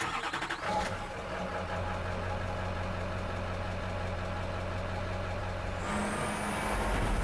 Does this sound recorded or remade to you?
recorded